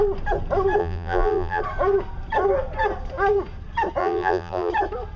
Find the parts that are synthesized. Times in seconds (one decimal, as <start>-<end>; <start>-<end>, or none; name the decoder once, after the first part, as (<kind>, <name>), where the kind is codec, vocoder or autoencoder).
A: 0.8-1.6 (vocoder, BigVGAN v2); 4.0-4.7

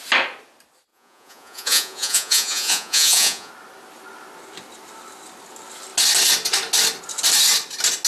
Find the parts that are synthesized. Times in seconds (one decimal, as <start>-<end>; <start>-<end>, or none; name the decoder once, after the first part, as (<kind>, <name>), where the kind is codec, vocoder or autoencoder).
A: 0.9-3.5 (vocoder, Vocos)

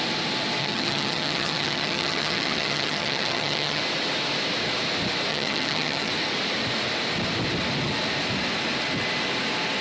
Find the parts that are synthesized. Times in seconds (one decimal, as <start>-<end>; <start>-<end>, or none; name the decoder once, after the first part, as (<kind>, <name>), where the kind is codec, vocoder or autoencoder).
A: 0.6-3.8 (vocoder, HiFi-GAN); 5.3-6.1

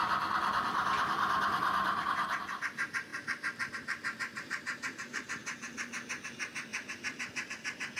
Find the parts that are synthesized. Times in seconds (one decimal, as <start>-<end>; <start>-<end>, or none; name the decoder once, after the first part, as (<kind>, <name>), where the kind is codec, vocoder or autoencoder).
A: 0.0-8.0 (vocoder, BigVGAN v2)

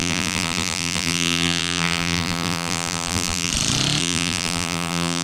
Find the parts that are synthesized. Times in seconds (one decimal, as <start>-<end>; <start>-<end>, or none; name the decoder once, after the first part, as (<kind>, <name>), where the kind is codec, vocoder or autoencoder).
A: 0.0-3.5 (vocoder, BigVGAN v2); 4.0-5.2

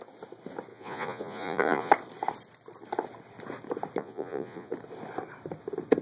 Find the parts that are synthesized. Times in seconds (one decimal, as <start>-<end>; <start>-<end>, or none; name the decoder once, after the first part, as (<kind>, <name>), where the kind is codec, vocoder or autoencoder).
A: 0.7-1.9 (vocoder, Vocos); 4.0-4.7

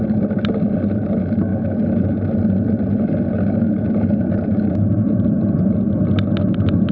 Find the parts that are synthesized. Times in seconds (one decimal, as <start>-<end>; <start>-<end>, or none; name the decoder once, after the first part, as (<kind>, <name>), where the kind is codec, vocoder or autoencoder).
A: none

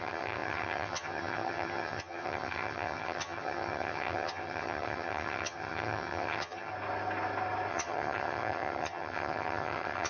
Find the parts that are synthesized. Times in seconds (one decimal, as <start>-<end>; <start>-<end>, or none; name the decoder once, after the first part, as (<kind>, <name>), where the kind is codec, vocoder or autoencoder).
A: 0.0-6.7 (vocoder, HiFi-GAN); 7.7-10.1